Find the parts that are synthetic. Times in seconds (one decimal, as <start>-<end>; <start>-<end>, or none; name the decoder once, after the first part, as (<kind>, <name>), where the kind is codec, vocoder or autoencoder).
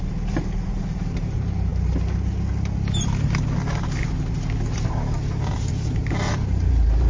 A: 0.0-1.7 (vocoder, BigVGAN v2); 5.7-7.1